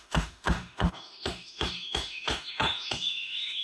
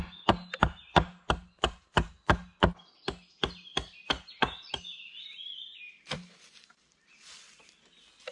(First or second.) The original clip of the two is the second